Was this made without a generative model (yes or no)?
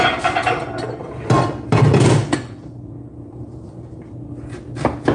yes